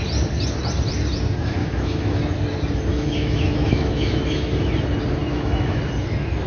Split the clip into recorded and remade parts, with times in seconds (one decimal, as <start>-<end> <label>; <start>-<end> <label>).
0.0-1.6 recorded; 1.6-2.2 remade; 2.2-2.9 recorded; 2.9-4.7 remade; 4.7-5.3 recorded; 5.3-5.8 remade; 5.8-6.5 recorded

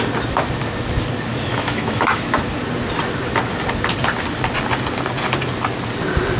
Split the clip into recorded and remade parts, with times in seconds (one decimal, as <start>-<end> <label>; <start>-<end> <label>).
0.0-1.3 recorded; 1.3-2.4 remade; 2.4-6.4 recorded

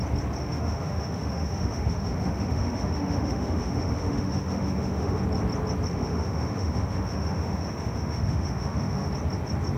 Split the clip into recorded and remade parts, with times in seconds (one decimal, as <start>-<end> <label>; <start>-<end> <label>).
0.0-0.4 recorded; 0.4-5.2 remade; 5.2-5.9 recorded; 5.9-9.1 remade; 9.1-9.8 recorded

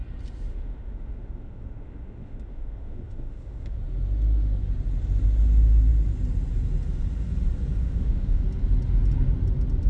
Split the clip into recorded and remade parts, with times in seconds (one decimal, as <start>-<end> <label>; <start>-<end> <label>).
0.0-0.5 recorded; 0.5-3.8 remade; 3.8-7.8 recorded; 7.8-8.4 remade; 8.4-9.9 recorded

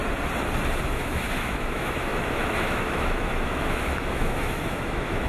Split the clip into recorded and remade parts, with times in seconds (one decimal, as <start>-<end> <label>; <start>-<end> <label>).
0.0-0.9 recorded; 0.9-5.3 remade

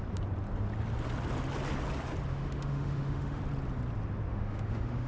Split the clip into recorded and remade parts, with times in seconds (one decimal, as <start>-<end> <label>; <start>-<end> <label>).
0.0-2.3 recorded; 2.3-3.4 remade; 3.4-4.3 recorded; 4.3-5.1 remade

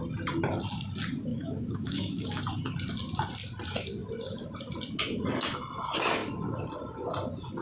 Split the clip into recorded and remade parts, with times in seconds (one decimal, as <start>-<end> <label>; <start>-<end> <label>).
0.0-1.3 recorded; 1.3-2.4 remade; 2.4-7.6 recorded

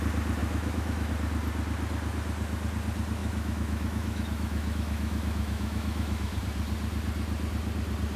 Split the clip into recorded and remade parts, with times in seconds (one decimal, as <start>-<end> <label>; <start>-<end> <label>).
0.0-0.4 recorded; 0.4-1.1 remade; 1.1-3.2 recorded; 3.2-6.4 remade; 6.4-8.2 recorded